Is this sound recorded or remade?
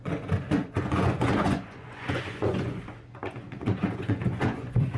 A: remade